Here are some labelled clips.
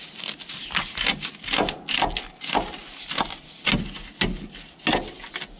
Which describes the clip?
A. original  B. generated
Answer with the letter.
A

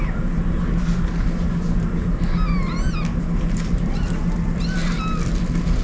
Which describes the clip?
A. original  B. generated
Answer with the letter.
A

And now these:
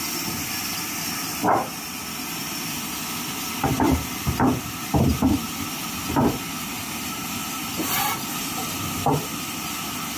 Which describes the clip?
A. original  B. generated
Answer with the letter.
A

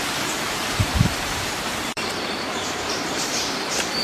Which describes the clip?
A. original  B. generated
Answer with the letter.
B